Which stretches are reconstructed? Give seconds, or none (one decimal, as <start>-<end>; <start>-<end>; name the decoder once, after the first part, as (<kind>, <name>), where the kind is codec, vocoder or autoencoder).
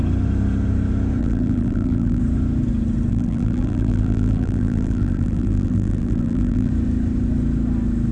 1.2-2.2 (vocoder, BigVGAN v2); 3.1-6.7